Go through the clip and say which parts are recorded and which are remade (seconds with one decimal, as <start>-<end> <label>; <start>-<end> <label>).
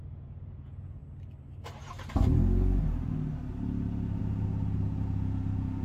0.0-1.0 remade; 1.0-4.2 recorded; 4.2-5.8 remade